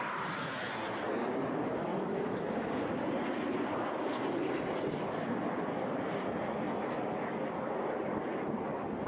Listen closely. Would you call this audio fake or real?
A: real